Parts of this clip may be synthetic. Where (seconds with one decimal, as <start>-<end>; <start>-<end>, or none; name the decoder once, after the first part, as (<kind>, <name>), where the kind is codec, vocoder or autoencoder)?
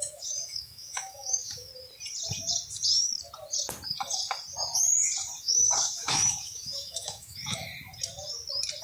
0.0-1.7 (autoencoder, DAC-VAE); 5.4-7.7